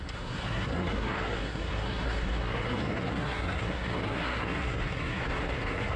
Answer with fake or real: fake